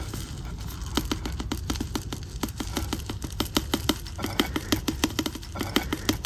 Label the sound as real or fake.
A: real